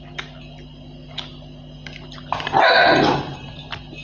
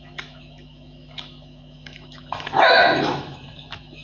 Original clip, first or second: first